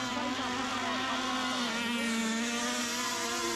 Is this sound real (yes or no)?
yes